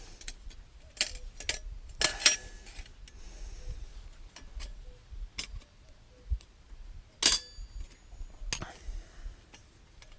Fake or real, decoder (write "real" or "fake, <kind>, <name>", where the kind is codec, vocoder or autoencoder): real